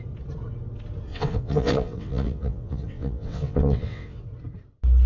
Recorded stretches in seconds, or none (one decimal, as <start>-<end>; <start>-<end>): 0.0-1.1; 4.2-5.1